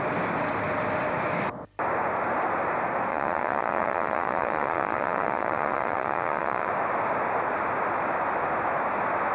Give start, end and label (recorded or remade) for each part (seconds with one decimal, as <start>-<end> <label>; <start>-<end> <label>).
0.0-3.1 recorded; 3.1-6.7 remade; 6.7-9.3 recorded